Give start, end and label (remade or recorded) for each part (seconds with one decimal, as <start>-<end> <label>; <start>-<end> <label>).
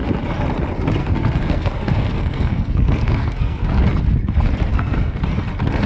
0.0-1.0 recorded; 1.0-3.8 remade; 3.8-4.7 recorded; 4.7-5.2 remade; 5.2-5.9 recorded